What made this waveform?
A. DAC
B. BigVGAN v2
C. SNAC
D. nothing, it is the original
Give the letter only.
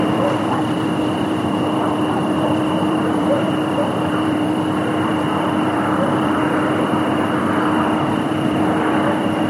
B